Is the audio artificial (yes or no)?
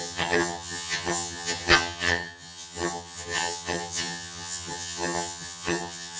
yes